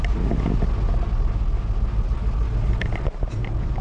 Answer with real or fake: real